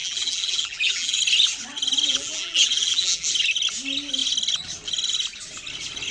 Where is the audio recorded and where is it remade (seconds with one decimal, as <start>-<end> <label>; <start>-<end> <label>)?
0.0-1.2 remade; 1.2-2.1 recorded; 2.1-3.3 remade; 3.3-6.1 recorded